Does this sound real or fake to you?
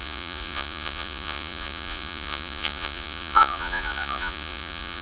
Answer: fake